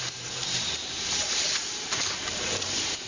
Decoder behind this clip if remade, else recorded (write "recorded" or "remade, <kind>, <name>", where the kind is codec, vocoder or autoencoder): remade, vocoder, BigVGAN v2